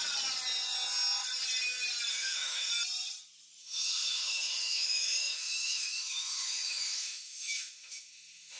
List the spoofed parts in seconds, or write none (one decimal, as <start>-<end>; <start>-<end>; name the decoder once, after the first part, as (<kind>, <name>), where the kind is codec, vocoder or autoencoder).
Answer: 2.1-2.7 (autoencoder, DAC-VAE); 3.6-8.6

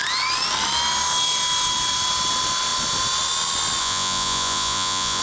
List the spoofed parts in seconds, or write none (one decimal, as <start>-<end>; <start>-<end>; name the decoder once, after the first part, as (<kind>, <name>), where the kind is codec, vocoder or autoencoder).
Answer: 3.8-5.2 (vocoder, Vocos)

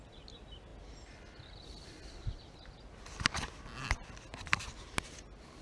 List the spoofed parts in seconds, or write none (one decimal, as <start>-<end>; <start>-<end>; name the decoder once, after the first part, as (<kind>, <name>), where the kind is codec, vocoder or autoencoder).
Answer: none

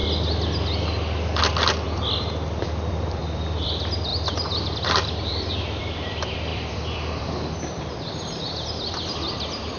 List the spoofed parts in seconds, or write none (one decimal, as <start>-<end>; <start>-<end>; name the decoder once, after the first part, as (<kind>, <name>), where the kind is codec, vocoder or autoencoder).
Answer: 1.4-9.8 (vocoder, BigVGAN v2)

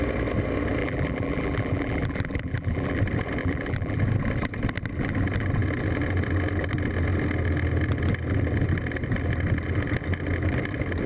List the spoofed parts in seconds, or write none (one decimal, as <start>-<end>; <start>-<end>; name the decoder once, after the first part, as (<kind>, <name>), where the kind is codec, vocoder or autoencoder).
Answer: 0.8-3.0 (vocoder, BigVGAN v2); 3.4-4.0

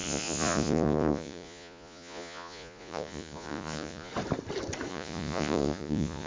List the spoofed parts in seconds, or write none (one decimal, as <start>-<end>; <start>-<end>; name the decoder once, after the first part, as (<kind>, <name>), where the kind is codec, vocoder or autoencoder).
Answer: 0.0-4.1 (vocoder, Vocos); 4.9-6.3

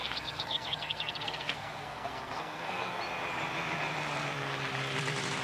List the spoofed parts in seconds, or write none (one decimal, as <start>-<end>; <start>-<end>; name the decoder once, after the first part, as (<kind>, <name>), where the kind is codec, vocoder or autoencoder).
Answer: 0.0-3.0 (codec, SNAC)